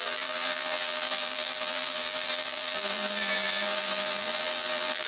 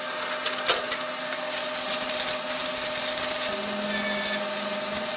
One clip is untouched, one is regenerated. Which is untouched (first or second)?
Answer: second